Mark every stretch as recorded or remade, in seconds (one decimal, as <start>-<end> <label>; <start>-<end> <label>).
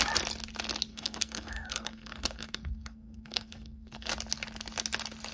0.0-0.9 recorded; 0.9-4.1 remade; 4.1-5.3 recorded